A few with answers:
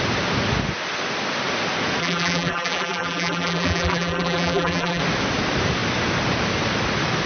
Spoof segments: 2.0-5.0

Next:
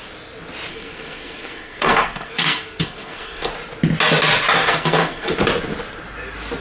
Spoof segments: 0.7-3.5; 4.6-5.3

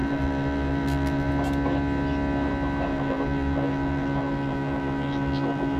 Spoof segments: 0.0-1.3; 2.9-5.8

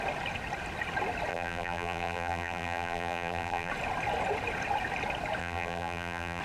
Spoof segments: 1.3-3.7; 5.4-6.4

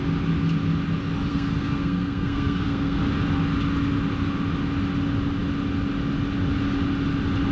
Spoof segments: 1.3-3.0

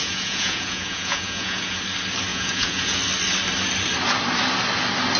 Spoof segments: 0.0-1.8; 2.3-3.0

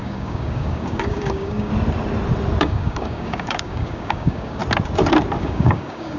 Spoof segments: 0.0-1.7; 2.6-4.6; 5.4-6.2

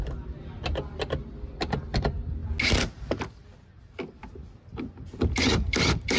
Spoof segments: 4.4-4.9